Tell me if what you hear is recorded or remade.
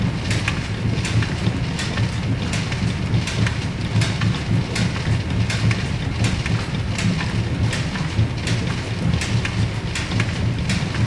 recorded